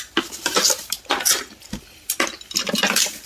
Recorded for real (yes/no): yes